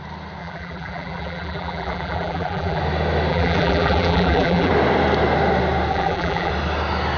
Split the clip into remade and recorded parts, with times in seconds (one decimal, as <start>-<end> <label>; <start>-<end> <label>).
0.0-0.4 recorded; 0.4-2.8 remade; 2.8-3.3 recorded; 3.3-4.7 remade; 4.7-5.9 recorded; 5.9-6.5 remade; 6.5-7.2 recorded

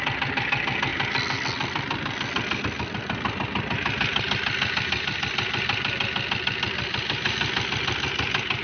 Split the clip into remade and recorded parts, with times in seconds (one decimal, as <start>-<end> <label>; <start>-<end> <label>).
0.0-8.6 recorded